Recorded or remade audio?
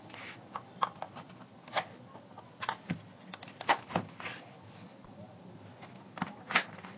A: recorded